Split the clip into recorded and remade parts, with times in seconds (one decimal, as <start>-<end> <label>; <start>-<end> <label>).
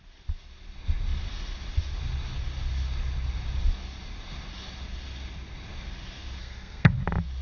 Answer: 0.0-6.4 recorded; 6.4-6.9 remade; 6.9-7.4 recorded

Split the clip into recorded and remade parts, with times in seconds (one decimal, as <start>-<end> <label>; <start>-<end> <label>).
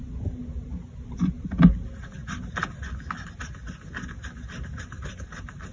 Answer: 0.0-5.7 recorded